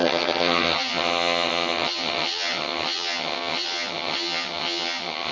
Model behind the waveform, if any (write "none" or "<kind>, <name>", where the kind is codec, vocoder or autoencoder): vocoder, HiFi-GAN